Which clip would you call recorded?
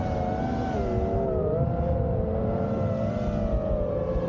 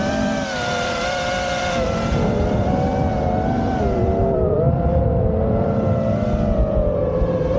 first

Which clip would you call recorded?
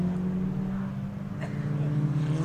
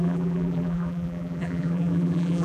first